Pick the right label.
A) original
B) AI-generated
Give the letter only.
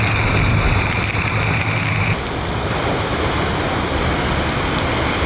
A